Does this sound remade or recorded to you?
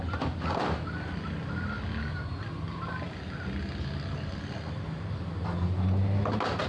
recorded